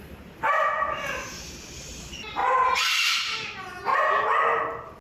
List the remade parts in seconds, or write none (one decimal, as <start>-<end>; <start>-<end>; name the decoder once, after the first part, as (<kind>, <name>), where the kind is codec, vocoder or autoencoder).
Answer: none